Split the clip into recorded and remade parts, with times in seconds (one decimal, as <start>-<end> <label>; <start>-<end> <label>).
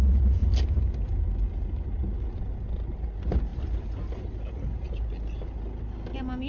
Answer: 0.0-6.5 recorded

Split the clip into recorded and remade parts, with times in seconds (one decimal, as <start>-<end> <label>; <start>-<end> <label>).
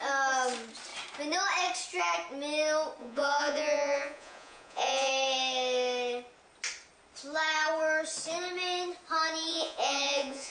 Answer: 0.0-3.0 recorded; 3.0-5.1 remade; 5.1-9.5 recorded; 9.5-10.5 remade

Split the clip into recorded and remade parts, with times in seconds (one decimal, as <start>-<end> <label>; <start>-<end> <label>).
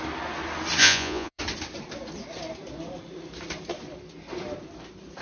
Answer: 0.0-0.8 recorded; 0.8-1.4 remade; 1.4-5.2 recorded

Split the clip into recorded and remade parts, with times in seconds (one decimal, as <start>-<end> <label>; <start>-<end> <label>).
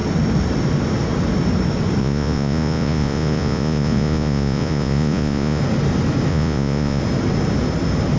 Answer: 0.0-2.0 recorded; 2.0-5.6 remade; 5.6-6.3 recorded; 6.3-7.0 remade; 7.0-8.2 recorded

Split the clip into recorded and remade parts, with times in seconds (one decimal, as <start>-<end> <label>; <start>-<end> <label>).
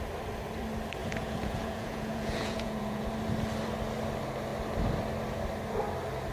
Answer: 0.0-1.0 recorded; 1.0-3.1 remade; 3.1-6.3 recorded